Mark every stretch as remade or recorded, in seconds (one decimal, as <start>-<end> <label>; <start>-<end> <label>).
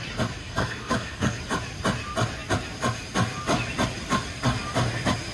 0.0-0.4 recorded; 0.4-1.4 remade; 1.4-5.3 recorded